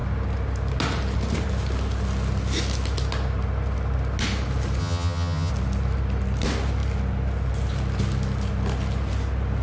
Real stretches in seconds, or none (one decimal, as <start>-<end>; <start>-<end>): 0.0-4.8; 5.5-9.6